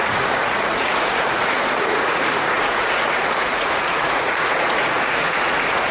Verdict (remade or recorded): remade